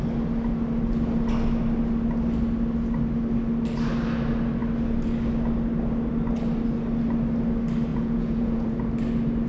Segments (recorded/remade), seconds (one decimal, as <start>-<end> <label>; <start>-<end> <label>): 0.0-7.9 recorded; 7.9-8.9 remade; 8.9-9.5 recorded